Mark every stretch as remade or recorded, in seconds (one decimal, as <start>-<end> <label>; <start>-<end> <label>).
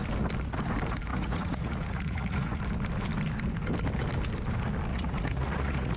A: 0.0-1.1 recorded; 1.1-2.6 remade; 2.6-4.9 recorded; 4.9-6.0 remade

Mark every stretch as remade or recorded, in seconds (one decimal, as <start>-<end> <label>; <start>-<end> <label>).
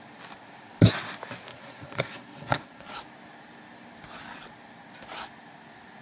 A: 0.0-1.5 recorded; 1.5-3.0 remade; 3.0-6.0 recorded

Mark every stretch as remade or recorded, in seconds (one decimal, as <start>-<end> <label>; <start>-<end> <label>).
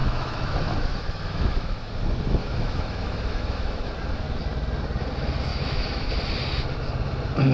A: 0.0-1.9 remade; 1.9-2.4 recorded; 2.4-3.9 remade; 3.9-5.5 recorded; 5.5-6.1 remade; 6.1-7.5 recorded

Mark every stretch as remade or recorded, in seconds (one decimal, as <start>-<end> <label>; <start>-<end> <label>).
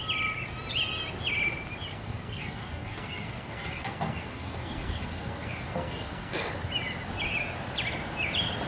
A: 0.0-1.9 recorded; 1.9-6.5 remade; 6.5-8.7 recorded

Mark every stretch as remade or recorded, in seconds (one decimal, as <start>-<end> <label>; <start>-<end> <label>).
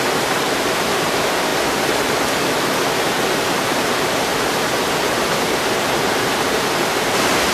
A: 0.0-1.5 remade; 1.5-2.9 recorded; 2.9-7.5 remade